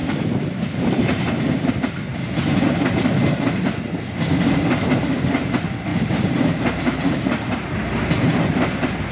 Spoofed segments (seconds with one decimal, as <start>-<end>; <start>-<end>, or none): 0.0-1.7; 2.1-2.8; 5.9-8.2